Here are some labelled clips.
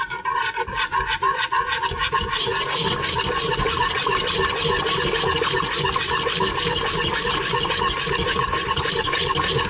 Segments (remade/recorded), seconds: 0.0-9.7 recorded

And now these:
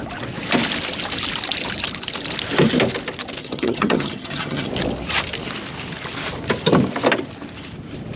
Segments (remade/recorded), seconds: 0.0-3.4 recorded; 3.4-4.7 remade; 4.7-8.2 recorded

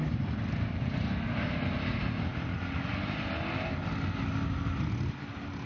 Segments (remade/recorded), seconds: 0.0-5.7 recorded